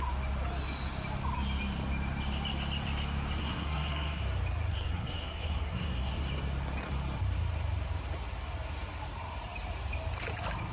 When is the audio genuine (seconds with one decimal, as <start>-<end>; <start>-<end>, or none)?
0.0-3.4; 4.2-4.7; 6.1-10.7